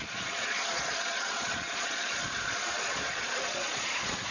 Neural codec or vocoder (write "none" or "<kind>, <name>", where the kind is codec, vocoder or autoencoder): vocoder, Vocos